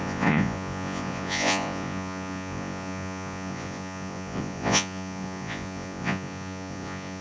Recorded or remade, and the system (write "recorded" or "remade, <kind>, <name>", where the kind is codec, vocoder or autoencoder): remade, vocoder, Vocos